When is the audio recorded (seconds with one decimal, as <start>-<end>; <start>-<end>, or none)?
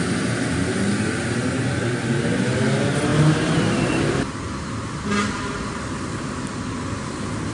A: 0.0-7.5